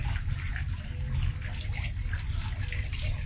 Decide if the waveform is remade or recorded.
recorded